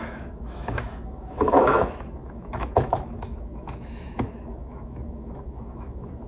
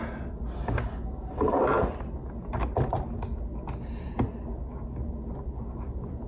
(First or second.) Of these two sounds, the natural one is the second